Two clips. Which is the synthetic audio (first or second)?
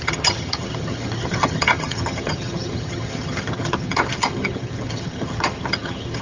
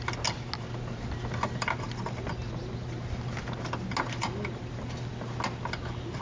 first